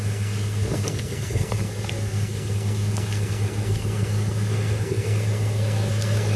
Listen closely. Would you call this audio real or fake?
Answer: fake